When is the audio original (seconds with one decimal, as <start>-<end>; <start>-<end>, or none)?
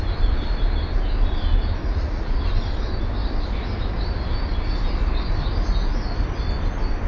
0.0-1.8; 2.4-7.1